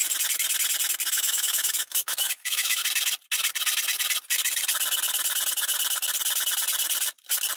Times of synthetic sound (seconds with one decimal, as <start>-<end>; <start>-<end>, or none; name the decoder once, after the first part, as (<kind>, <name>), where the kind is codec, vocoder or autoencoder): 1.1-2.8 (autoencoder, DAC-VAE)